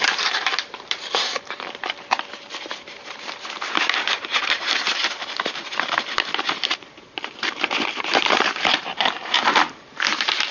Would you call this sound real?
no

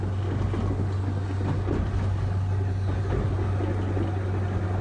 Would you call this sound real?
yes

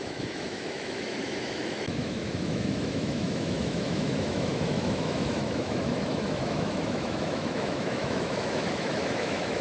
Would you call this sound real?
no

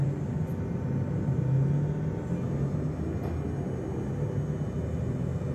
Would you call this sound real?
yes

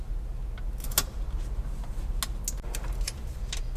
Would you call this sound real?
yes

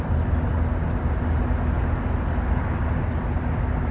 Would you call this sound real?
yes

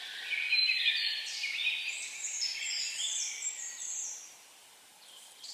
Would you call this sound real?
yes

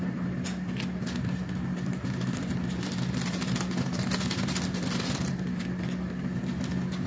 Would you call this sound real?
yes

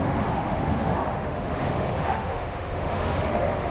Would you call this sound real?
no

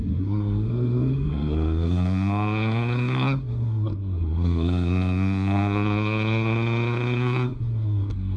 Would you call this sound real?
no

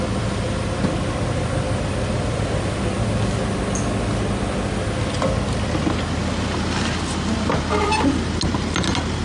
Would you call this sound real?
yes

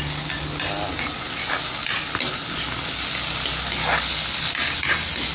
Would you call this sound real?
yes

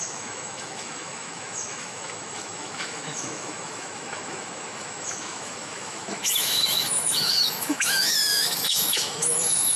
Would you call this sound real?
no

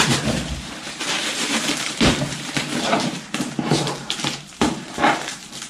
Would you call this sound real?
no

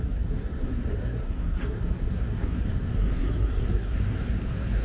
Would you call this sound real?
no